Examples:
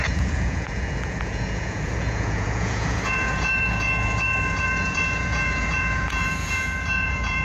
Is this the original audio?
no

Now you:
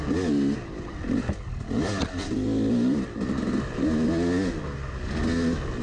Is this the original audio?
yes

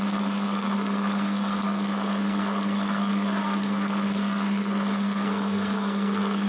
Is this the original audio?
no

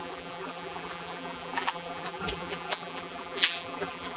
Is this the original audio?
no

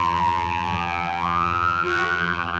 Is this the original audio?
no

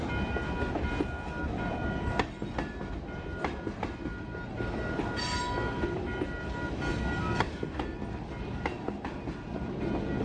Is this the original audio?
yes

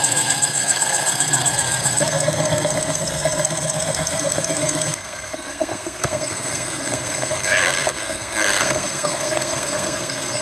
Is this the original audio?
no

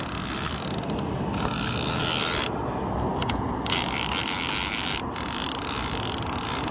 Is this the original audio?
yes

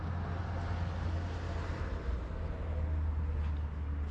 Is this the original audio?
yes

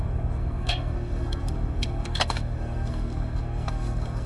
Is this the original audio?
no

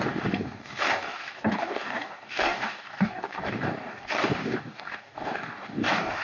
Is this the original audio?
no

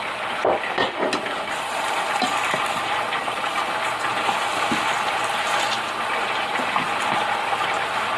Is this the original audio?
yes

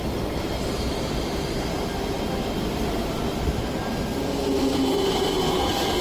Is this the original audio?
yes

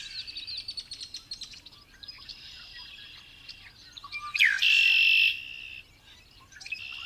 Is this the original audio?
yes